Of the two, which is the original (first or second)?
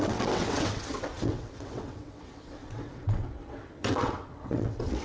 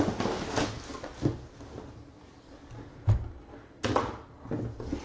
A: second